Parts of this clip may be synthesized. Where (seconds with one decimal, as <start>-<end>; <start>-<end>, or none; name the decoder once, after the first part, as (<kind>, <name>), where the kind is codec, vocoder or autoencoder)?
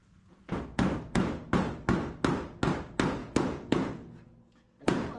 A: 0.0-0.6 (vocoder, Vocos); 3.2-5.2